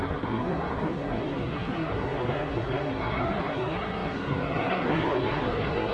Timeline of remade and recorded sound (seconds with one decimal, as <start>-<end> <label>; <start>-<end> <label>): 0.0-5.9 remade